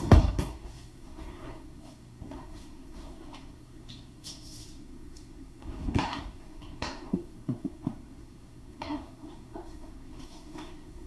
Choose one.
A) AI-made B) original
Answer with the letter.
A